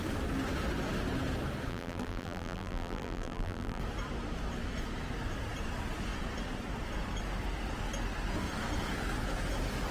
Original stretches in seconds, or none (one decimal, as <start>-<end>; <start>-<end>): 0.0-1.7; 3.8-9.9